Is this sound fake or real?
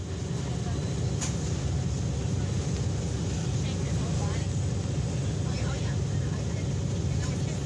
real